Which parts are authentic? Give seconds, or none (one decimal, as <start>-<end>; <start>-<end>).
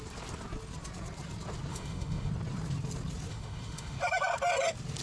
0.0-1.7; 2.3-3.3; 4.0-5.0